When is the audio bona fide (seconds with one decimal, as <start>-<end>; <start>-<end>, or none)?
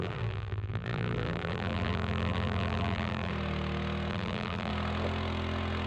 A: 3.3-4.1; 4.7-5.9